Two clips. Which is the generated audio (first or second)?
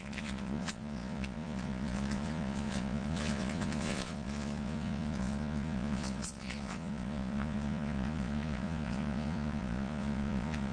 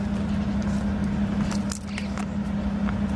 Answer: first